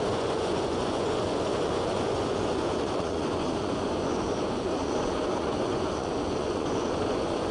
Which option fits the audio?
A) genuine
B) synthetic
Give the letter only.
B